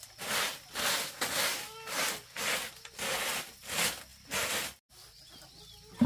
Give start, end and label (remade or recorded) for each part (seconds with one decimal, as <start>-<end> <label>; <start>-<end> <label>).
0.0-6.1 recorded